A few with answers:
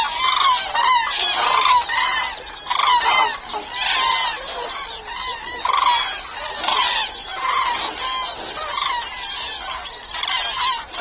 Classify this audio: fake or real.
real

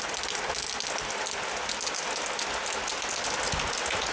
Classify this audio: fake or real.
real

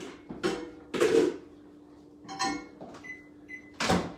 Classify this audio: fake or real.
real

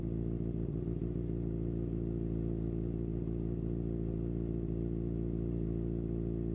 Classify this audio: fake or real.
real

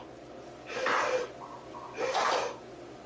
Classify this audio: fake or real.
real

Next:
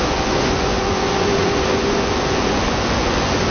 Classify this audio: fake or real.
fake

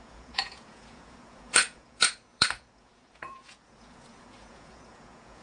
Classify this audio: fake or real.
fake